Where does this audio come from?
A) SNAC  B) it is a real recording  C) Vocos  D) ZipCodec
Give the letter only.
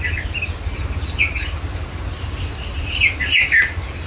B